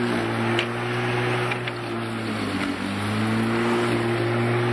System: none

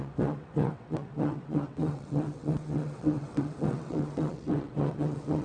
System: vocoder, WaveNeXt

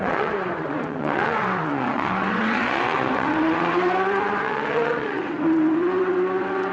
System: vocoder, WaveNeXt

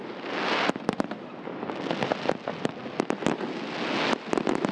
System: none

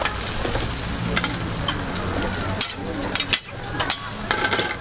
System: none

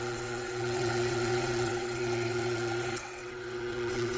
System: vocoder, WaveNeXt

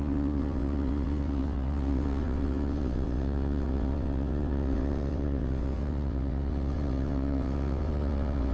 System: vocoder, WaveNeXt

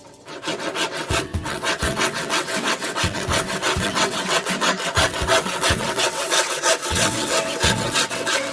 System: vocoder, WaveNeXt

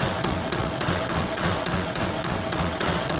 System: vocoder, WaveNeXt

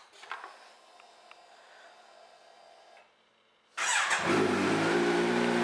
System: none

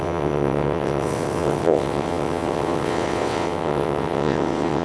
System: vocoder, WaveNeXt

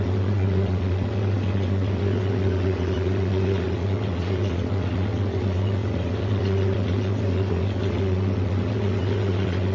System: vocoder, WaveNeXt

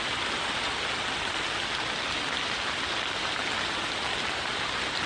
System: none